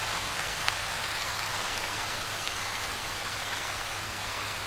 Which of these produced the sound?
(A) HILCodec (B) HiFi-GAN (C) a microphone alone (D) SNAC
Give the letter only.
D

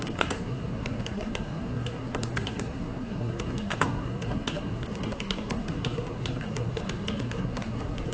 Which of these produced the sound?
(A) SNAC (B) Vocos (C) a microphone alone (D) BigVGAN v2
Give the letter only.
A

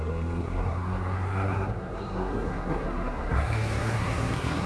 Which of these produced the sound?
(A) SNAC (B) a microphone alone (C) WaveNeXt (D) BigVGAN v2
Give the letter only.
A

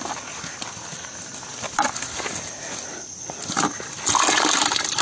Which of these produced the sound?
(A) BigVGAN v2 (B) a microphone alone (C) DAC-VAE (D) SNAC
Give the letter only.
B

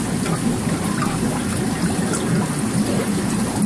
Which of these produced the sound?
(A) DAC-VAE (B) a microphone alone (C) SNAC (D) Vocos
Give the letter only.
B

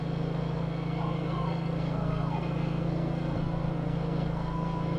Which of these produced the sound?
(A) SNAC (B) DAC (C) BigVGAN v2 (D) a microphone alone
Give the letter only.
A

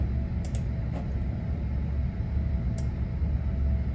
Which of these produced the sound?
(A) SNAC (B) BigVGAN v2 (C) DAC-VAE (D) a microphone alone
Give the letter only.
D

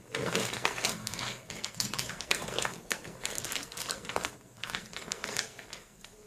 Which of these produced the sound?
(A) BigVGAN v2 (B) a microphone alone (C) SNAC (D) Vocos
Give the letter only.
C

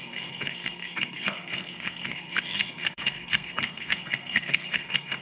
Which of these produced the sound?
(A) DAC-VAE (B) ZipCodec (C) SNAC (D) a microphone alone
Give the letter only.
C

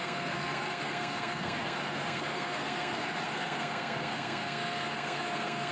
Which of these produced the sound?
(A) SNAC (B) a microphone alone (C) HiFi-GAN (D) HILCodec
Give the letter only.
A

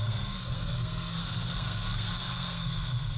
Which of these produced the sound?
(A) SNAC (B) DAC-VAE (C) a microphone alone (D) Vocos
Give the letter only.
A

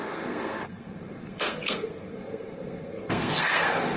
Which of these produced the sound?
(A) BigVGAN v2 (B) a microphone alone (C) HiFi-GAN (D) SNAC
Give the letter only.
D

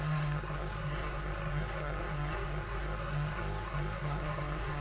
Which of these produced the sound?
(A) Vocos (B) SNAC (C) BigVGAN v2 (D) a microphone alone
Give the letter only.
B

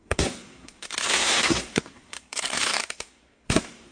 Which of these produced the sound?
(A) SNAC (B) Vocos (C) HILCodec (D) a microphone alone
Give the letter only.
A